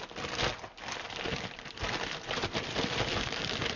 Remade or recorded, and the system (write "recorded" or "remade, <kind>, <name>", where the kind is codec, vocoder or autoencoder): recorded